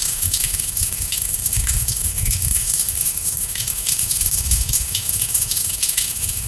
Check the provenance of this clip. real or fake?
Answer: fake